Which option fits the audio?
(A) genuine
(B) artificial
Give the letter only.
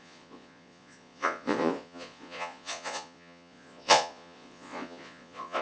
B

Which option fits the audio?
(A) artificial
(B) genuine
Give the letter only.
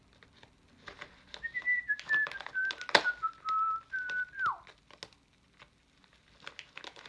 B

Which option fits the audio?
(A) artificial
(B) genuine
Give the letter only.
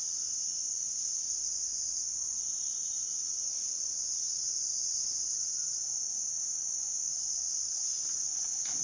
A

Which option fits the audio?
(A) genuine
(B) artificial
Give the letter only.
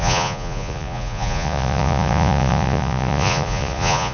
B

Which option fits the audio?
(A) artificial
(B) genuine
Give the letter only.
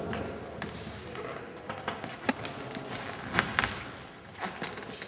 B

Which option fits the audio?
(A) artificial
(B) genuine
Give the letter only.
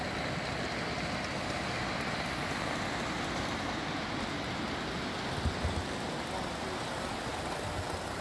B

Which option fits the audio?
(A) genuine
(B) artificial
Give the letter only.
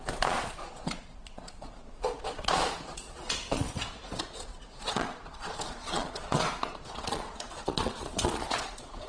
B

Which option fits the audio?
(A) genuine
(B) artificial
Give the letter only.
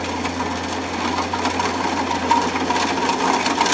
A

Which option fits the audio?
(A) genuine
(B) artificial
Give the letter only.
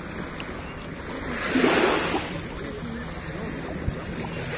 A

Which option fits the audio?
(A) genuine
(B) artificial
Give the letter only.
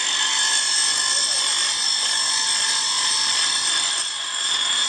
A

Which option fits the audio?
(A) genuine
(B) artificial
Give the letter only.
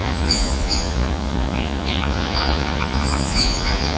B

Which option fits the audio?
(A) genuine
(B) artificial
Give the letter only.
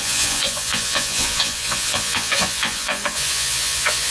B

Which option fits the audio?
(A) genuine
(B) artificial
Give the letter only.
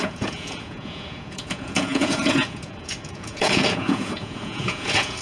B